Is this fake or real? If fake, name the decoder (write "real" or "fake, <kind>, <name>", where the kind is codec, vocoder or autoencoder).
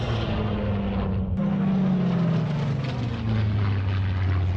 real